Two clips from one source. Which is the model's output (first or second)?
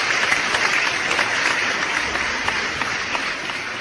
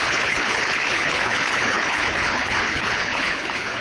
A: second